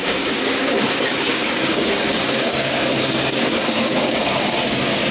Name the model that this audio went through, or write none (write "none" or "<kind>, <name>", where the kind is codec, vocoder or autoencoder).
codec, DAC